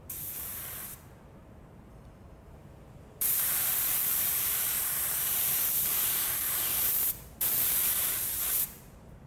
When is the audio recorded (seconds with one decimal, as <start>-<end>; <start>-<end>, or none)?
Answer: none

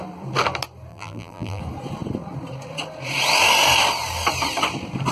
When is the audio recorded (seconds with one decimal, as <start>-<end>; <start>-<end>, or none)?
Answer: 0.0-0.9; 1.6-5.1

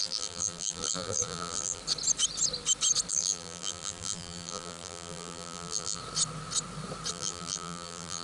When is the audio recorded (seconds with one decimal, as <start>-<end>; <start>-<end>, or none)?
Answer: 1.8-3.1; 6.0-7.1

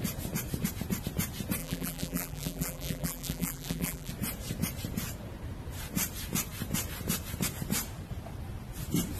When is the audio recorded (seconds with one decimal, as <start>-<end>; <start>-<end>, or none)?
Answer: 0.0-1.6; 4.1-9.2

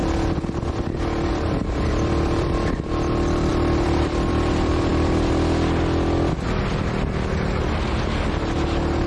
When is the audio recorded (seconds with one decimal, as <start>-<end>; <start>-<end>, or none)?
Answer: 0.0-1.3; 4.9-9.1

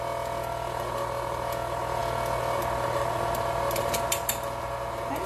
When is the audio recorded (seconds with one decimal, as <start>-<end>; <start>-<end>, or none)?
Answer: 0.0-5.3

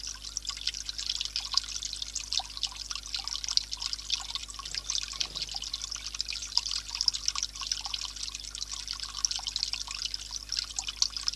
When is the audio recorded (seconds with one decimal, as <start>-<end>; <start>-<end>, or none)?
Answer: 0.0-6.4; 7.2-11.4

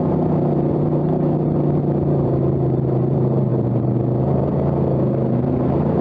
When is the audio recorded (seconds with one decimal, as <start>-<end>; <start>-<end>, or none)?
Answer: none